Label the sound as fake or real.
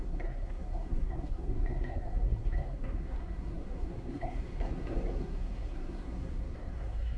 fake